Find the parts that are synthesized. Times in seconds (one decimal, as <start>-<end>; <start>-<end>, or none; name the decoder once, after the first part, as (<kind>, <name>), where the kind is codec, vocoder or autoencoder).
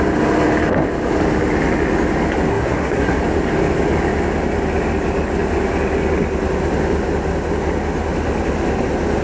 2.5-3.2 (codec, SNAC)